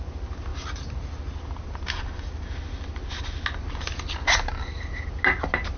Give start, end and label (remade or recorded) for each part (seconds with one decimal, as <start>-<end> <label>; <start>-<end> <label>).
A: 0.0-5.8 recorded

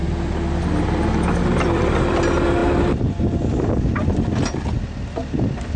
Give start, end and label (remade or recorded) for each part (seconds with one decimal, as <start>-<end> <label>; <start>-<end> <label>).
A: 0.0-5.8 recorded

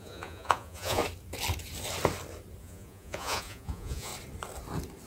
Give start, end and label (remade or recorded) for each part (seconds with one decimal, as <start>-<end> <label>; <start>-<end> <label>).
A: 0.0-1.0 remade; 1.0-2.6 recorded; 2.6-4.1 remade; 4.1-5.1 recorded